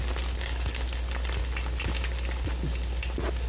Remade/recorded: recorded